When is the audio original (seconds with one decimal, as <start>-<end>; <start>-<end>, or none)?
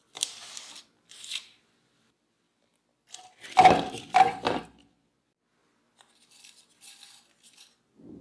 4.6-8.2